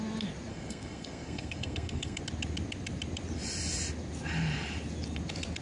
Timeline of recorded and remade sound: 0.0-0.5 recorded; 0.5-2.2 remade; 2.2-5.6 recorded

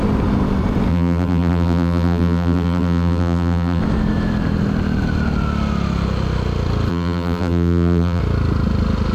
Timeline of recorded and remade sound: 0.0-0.9 recorded; 0.9-3.8 remade; 3.8-6.9 recorded; 6.9-8.2 remade; 8.2-9.1 recorded

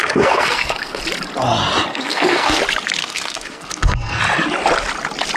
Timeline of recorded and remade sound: 0.0-1.0 remade; 1.0-1.9 recorded; 1.9-2.6 remade; 2.6-3.0 recorded; 3.0-4.2 remade; 4.2-5.4 recorded